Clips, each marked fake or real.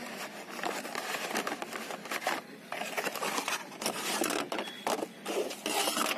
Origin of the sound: real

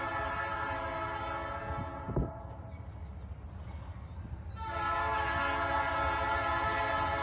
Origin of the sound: real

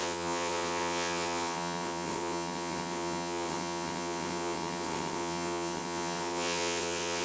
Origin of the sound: fake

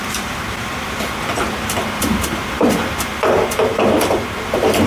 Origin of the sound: fake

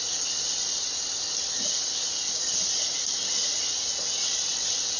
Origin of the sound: real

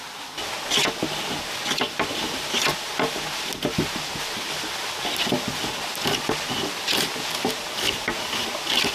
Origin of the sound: real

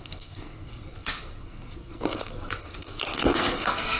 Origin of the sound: fake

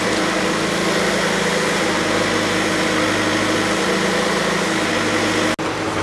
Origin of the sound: real